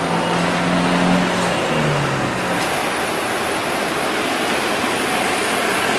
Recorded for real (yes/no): yes